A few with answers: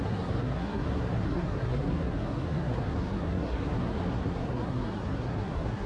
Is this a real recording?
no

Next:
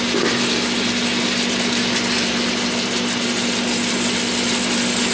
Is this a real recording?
yes